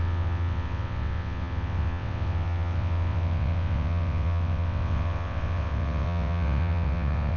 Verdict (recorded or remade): remade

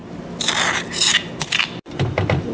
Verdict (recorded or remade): recorded